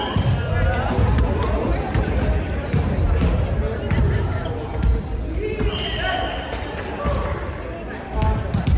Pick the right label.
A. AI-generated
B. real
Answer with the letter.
B